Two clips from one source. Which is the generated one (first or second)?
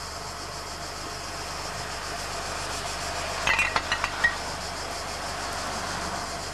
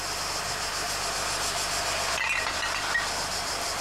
second